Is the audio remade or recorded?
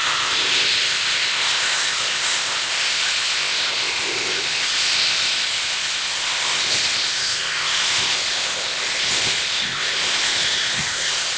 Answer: remade